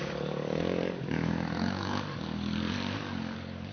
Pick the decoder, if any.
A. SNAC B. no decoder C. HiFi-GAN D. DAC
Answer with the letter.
D